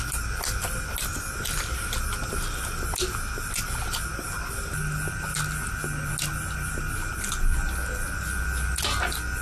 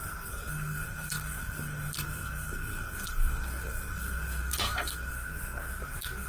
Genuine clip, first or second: first